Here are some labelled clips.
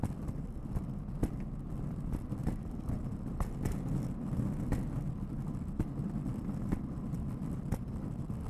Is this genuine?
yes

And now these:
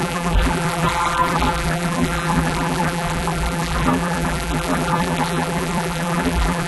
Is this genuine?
no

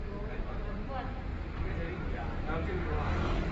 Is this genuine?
no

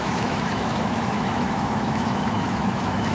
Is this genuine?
no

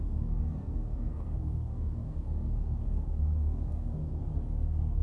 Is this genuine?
no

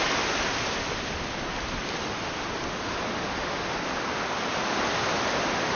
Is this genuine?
yes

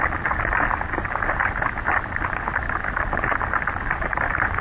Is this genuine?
yes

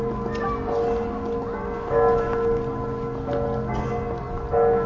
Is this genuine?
yes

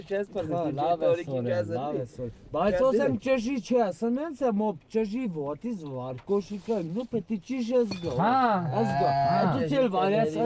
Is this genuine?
yes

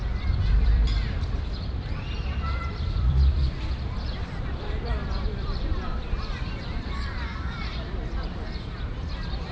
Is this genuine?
no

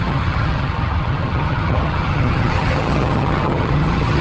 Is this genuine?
no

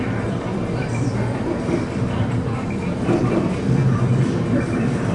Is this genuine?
no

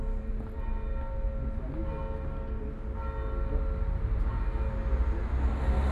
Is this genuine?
yes